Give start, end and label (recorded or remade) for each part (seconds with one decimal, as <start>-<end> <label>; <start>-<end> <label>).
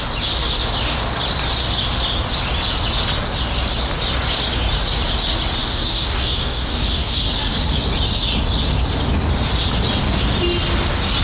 0.0-5.6 recorded; 5.6-7.2 remade; 7.2-11.2 recorded